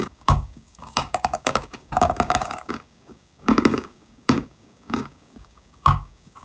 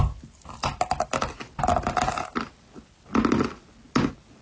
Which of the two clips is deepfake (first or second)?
first